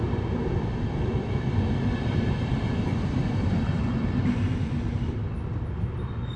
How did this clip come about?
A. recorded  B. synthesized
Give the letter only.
A